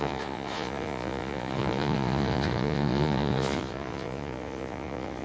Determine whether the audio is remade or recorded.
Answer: remade